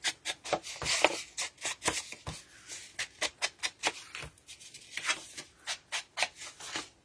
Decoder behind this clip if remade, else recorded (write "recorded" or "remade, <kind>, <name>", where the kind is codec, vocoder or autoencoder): recorded